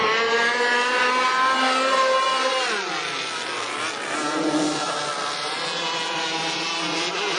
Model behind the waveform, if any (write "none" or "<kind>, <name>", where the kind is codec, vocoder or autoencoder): none